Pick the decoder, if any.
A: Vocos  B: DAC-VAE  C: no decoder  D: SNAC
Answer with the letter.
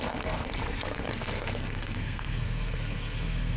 D